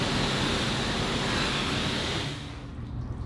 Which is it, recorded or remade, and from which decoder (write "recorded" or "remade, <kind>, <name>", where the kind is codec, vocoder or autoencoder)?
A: recorded